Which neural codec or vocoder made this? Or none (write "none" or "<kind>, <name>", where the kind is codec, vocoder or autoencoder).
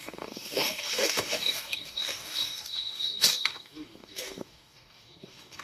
codec, DAC